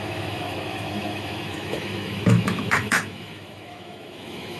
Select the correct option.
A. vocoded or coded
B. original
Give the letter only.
A